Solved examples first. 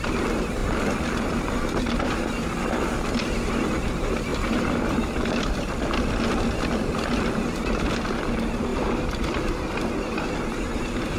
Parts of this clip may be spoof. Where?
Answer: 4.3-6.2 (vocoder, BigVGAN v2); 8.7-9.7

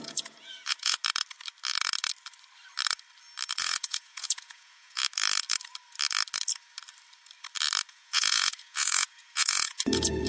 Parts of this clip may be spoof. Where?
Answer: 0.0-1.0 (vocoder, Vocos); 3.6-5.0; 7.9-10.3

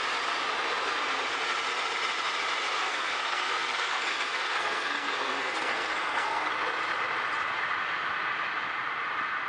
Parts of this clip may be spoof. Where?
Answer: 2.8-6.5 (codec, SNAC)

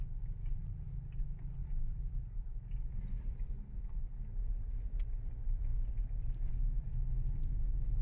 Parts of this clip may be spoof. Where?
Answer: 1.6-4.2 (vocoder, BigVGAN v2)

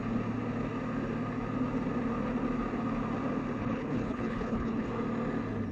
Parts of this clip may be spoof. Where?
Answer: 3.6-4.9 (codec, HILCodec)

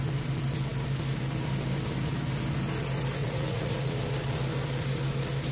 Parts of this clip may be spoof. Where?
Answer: 3.2-3.9 (vocoder, Vocos)